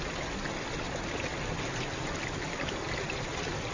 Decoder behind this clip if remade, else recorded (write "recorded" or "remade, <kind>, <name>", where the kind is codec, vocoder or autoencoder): recorded